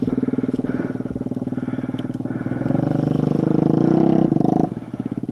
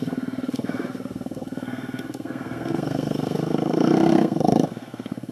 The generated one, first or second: second